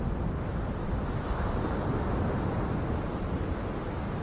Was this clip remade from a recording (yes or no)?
no